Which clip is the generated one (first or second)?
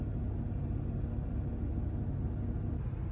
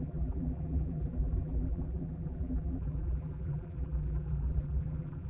second